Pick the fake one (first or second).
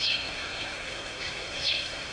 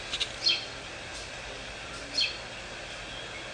first